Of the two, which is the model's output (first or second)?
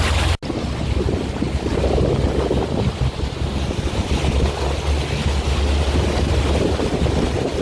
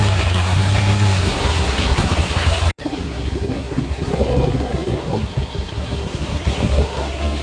second